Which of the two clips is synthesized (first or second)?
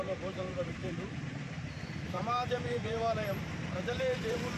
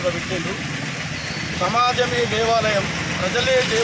first